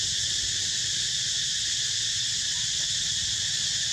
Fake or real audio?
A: real